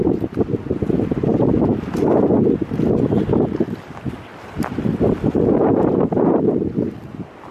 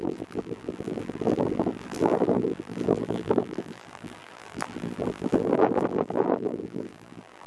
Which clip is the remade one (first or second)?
second